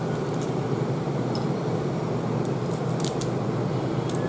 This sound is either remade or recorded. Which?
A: recorded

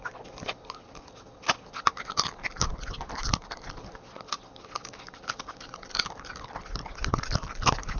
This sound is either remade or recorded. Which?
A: recorded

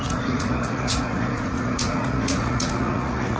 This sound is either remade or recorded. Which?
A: remade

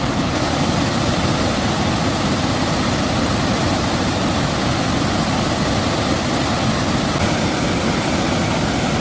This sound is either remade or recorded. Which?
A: recorded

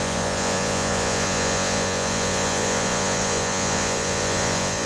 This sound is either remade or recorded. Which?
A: remade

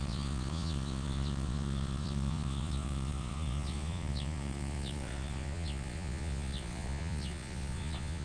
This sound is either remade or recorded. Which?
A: remade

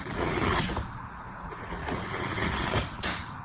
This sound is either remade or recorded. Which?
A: remade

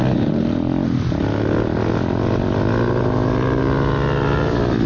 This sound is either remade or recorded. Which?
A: recorded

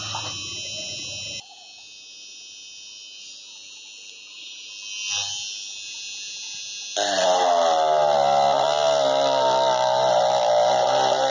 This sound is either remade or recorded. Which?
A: recorded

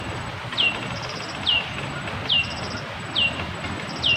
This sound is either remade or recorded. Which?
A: recorded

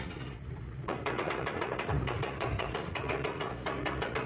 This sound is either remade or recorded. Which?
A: remade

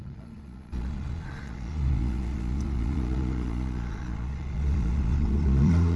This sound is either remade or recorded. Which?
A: remade